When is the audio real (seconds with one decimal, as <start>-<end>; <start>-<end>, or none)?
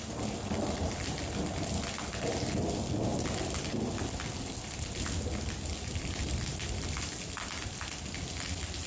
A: 0.0-8.9